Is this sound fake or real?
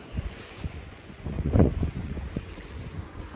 fake